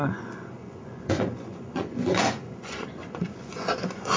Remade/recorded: remade